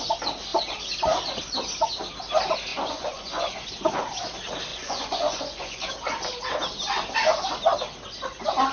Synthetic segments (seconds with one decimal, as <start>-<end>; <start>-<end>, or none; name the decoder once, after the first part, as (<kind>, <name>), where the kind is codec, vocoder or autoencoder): 2.7-3.6 (vocoder, Vocos); 4.7-5.9